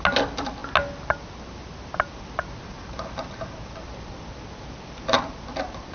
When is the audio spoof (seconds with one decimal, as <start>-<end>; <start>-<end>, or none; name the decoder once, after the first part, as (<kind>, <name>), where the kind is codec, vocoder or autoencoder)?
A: none